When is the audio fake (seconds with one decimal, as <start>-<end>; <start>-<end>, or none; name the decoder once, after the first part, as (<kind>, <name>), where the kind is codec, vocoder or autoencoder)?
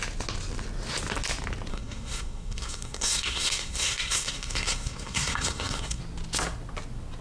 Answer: 1.7-6.0 (codec, SNAC)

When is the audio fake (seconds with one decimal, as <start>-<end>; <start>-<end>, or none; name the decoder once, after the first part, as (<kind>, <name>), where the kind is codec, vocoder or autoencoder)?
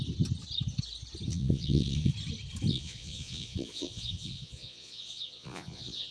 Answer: 1.3-2.1 (vocoder, Vocos); 2.7-6.1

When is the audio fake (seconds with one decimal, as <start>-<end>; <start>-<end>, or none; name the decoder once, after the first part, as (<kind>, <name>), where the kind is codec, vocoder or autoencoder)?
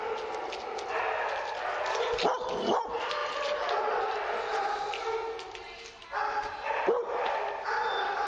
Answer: 3.2-4.0 (vocoder, BigVGAN v2); 4.5-5.0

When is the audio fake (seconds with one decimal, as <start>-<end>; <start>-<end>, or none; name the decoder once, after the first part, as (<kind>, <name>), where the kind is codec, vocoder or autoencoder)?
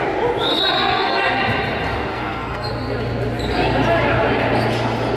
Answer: 0.5-1.4 (codec, SNAC); 2.1-2.7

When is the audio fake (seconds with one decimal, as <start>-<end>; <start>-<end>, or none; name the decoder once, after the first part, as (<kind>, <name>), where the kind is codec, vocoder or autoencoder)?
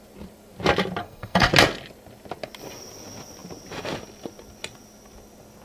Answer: 1.0-1.5 (codec, SNAC)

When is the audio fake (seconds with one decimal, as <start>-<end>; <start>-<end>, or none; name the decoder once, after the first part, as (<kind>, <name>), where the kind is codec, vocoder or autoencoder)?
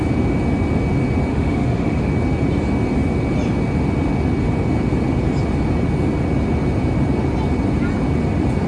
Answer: 1.3-2.1 (autoencoder, DAC-VAE)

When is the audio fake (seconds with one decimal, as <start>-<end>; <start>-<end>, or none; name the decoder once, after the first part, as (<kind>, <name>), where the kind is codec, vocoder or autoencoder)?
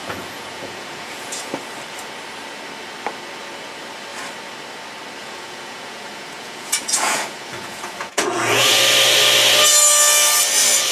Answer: 0.0-1.5 (vocoder, Vocos); 5.2-8.8